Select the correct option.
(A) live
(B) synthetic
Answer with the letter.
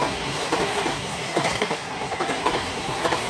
B